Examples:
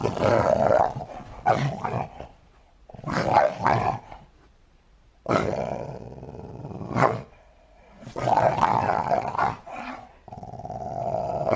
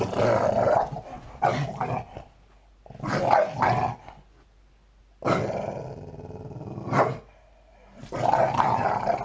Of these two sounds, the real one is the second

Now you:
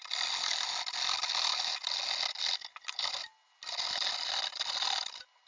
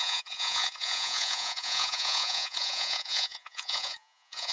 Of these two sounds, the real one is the first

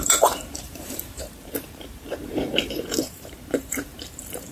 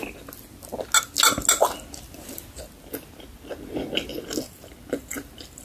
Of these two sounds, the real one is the second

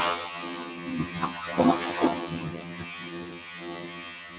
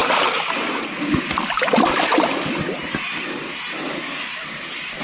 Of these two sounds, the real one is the second